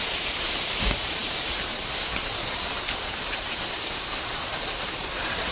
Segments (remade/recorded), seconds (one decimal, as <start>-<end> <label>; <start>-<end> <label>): 0.0-5.5 remade